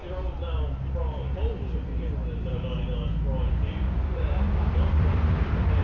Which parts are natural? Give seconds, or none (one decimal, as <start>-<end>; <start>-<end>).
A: 0.0-3.5